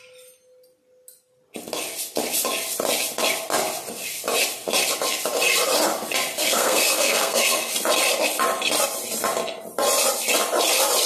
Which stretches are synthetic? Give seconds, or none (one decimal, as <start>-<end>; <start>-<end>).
6.4-7.7